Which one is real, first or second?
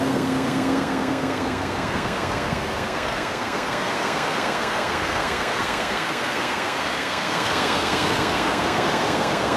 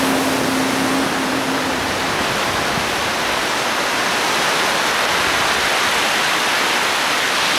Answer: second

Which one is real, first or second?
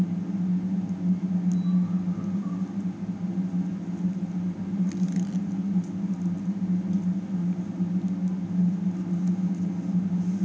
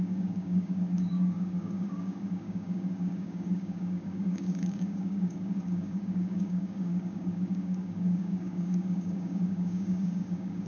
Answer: first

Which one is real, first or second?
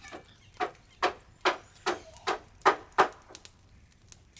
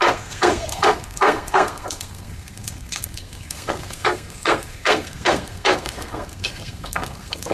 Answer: first